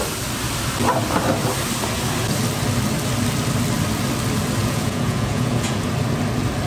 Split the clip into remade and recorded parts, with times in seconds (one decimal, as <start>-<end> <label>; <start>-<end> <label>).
0.0-4.6 recorded; 4.6-5.9 remade; 5.9-6.7 recorded